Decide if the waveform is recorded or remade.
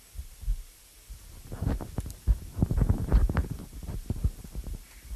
recorded